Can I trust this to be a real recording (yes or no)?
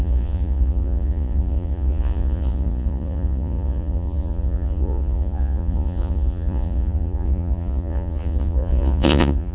no